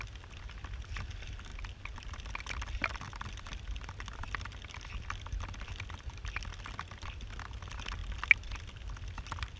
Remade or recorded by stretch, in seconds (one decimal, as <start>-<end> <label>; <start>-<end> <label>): 0.0-9.6 recorded